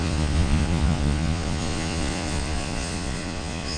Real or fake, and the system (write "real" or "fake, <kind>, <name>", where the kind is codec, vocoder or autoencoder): fake, vocoder, Vocos